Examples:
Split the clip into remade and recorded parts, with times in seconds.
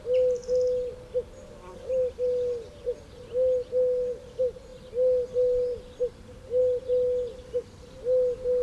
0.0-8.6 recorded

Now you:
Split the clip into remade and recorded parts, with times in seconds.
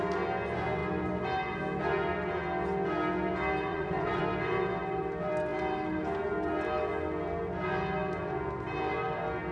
0.0-3.7 recorded; 3.7-4.2 remade; 4.2-9.5 recorded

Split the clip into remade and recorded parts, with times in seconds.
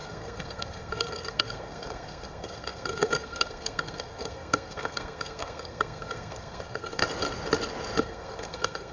0.0-7.0 remade; 7.0-8.0 recorded; 8.0-8.9 remade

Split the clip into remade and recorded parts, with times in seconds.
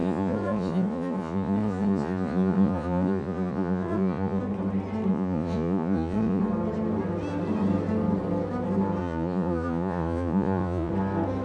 0.0-4.4 remade; 4.4-5.1 recorded; 5.1-6.4 remade; 6.4-9.0 recorded; 9.0-10.9 remade; 10.9-11.4 recorded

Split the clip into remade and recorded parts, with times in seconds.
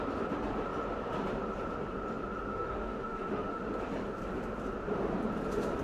0.0-2.5 recorded; 2.5-3.6 remade; 3.6-5.8 recorded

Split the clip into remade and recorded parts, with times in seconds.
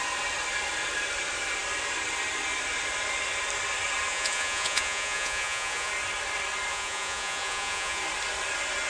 0.0-4.1 recorded; 4.1-5.9 remade; 5.9-6.7 recorded; 6.7-8.0 remade; 8.0-8.9 recorded